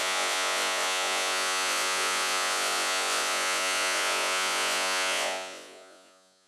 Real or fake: fake